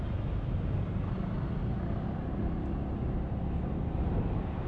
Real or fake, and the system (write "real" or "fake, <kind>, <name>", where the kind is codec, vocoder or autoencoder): real